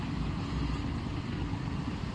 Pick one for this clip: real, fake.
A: fake